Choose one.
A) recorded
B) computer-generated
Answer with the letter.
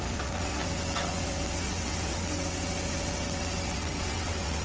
B